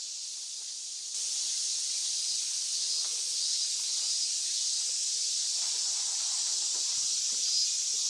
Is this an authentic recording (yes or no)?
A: yes